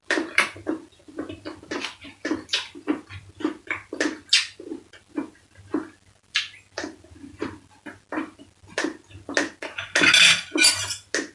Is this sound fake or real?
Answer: real